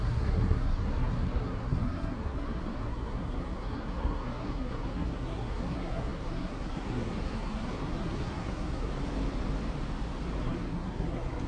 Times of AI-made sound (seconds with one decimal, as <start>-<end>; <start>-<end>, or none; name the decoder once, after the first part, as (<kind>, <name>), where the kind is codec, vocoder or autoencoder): 0.0-8.9 (codec, SNAC); 10.4-11.5